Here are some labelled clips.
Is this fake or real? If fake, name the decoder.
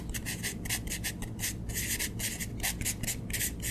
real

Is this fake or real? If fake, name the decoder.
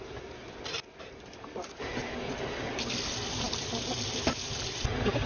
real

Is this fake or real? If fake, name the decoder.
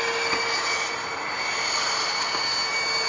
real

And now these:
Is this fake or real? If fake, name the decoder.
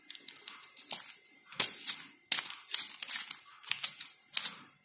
real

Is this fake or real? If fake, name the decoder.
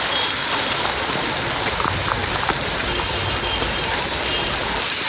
real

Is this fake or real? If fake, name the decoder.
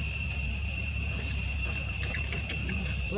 fake, vocoder, BigVGAN v2